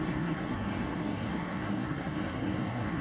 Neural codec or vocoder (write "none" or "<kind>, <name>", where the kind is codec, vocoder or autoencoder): codec, SNAC